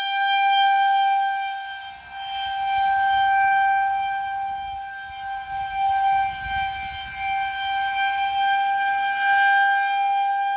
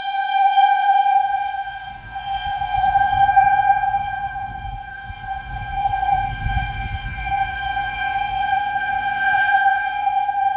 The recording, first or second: first